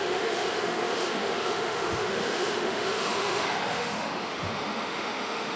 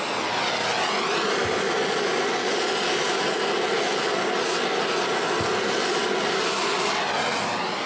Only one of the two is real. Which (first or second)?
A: second